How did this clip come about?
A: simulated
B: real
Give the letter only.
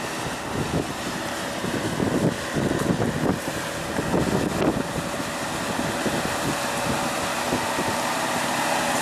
B